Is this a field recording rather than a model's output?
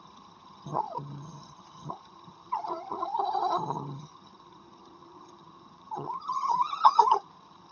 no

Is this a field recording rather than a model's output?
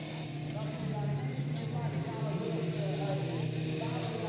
yes